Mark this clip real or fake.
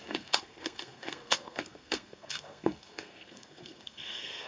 fake